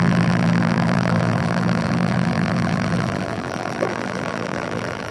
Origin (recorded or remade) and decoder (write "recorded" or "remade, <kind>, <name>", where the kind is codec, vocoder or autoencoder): remade, vocoder, BigVGAN v2